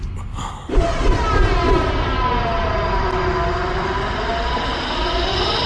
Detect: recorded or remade recorded